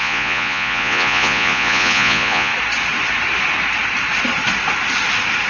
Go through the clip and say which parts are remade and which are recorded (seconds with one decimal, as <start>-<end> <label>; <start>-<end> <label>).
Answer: 0.0-2.5 remade; 2.5-5.5 recorded